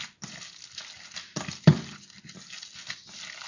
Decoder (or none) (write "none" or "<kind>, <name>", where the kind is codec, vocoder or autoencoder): none